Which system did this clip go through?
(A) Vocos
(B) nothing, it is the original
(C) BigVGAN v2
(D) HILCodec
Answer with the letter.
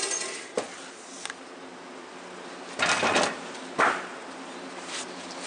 B